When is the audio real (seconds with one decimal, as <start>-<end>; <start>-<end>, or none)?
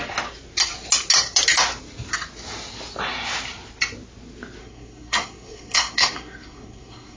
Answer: 0.0-4.6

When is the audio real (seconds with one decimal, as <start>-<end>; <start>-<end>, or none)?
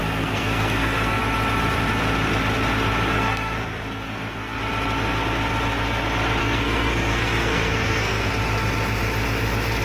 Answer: 1.2-3.1; 4.6-6.4; 8.3-9.8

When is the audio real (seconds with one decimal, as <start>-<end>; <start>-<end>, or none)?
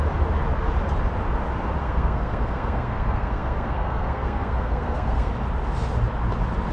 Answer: 0.0-1.8; 5.3-6.7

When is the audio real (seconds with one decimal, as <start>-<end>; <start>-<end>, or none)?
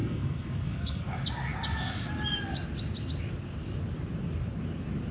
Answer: 1.1-5.1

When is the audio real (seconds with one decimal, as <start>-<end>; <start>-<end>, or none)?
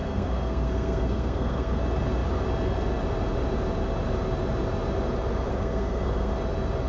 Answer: 1.8-5.5; 6.3-6.9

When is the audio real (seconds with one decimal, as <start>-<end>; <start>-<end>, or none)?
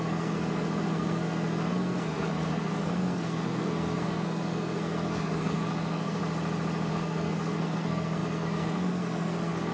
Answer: 6.2-6.9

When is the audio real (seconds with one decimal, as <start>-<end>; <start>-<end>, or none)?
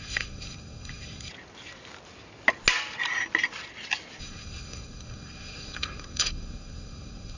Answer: 1.3-4.2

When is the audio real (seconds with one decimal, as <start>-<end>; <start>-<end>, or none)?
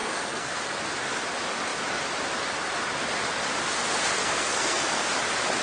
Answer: 0.6-4.2; 5.1-5.6